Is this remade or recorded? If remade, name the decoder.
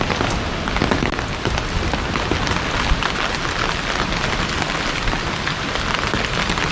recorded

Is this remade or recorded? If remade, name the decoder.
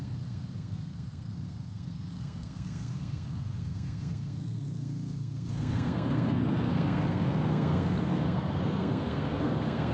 remade, codec, SNAC